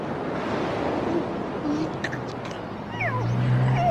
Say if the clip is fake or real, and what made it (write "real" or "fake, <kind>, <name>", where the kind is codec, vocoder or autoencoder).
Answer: real